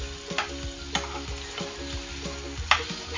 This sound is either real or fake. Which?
real